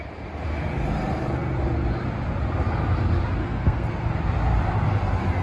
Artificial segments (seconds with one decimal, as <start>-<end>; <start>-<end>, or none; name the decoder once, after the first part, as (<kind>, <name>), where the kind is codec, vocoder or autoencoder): 3.4-4.1 (codec, SNAC)